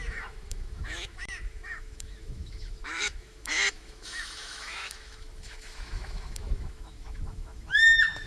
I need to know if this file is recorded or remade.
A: remade